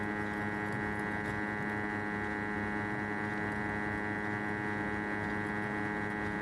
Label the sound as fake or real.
real